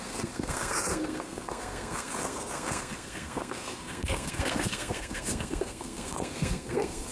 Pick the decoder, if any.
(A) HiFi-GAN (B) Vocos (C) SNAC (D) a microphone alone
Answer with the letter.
C